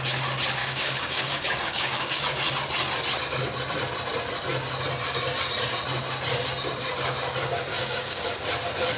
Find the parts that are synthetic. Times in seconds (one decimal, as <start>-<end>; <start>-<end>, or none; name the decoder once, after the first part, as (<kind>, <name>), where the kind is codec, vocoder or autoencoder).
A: 0.6-2.2 (codec, DAC); 7.7-8.3